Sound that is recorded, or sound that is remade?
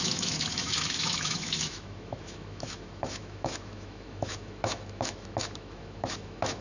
remade